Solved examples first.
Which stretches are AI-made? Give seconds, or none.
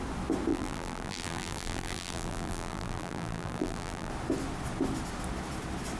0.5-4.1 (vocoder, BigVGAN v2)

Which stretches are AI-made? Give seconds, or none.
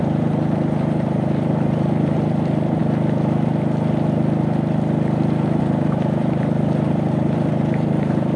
0.0-2.8 (vocoder, BigVGAN v2); 5.6-8.4